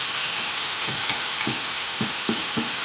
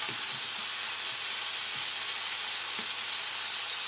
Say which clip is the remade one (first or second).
first